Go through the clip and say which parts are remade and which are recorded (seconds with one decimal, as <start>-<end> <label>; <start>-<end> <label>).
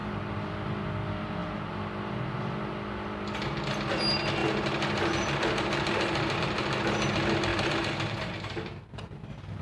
0.0-4.4 recorded; 4.4-6.4 remade; 6.4-7.5 recorded; 7.5-8.5 remade; 8.5-9.6 recorded